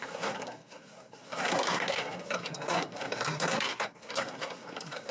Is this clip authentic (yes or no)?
no